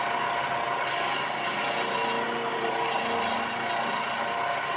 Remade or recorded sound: recorded